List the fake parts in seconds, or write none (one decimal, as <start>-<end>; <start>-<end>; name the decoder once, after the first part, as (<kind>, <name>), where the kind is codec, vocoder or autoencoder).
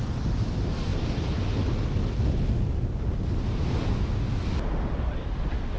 none